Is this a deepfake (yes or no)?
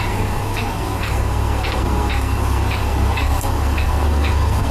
yes